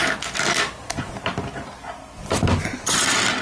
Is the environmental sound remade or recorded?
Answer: recorded